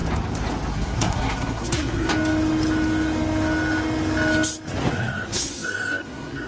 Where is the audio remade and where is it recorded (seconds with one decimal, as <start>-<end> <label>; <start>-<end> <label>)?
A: 0.0-0.7 recorded; 0.7-2.1 remade; 2.1-4.9 recorded; 4.9-6.5 remade